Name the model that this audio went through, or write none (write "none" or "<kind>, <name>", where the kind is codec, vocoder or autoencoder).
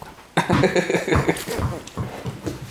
vocoder, BigVGAN v2